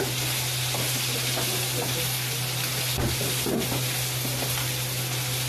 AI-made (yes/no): no